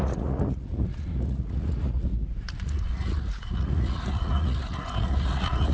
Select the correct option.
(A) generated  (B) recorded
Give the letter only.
A